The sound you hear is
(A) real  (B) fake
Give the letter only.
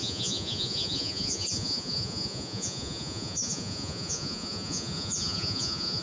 B